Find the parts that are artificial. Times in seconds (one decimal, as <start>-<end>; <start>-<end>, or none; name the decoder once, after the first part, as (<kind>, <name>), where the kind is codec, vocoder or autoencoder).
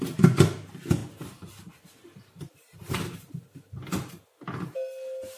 none